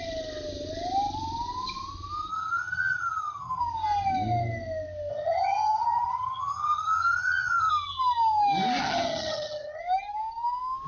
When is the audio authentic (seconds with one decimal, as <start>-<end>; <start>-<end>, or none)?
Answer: 0.0-2.3; 3.6-5.1; 7.7-8.8; 9.8-10.9